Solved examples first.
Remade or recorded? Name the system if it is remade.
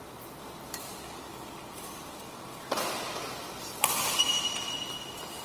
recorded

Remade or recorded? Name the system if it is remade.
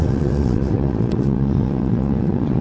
remade, vocoder, WaveNeXt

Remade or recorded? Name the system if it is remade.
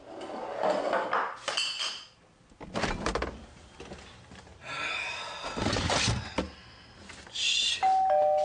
recorded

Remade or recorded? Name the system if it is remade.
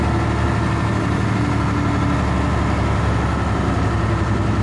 recorded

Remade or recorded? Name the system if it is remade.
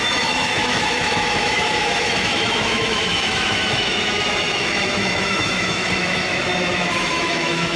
remade, autoencoder, DAC-VAE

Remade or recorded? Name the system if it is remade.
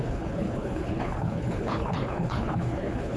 remade, codec, HILCodec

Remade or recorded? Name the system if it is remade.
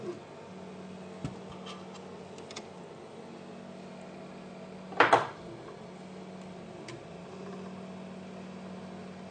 recorded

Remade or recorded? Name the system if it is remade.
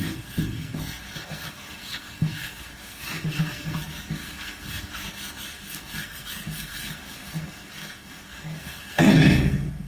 remade, codec, SNAC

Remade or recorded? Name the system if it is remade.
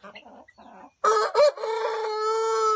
recorded